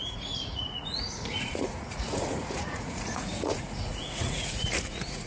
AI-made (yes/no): yes